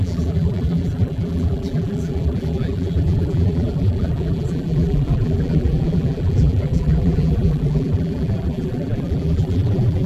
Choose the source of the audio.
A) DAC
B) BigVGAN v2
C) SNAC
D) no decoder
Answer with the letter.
B